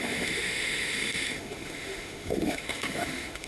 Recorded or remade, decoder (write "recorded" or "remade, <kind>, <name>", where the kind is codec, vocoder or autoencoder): remade, autoencoder, DAC-VAE